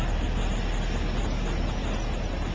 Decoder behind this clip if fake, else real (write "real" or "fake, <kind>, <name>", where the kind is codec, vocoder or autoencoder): real